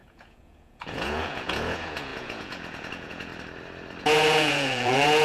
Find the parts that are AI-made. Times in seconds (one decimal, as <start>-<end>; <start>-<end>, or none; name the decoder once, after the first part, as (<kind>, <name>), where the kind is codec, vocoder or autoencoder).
0.0-3.3 (vocoder, Vocos); 4.0-5.2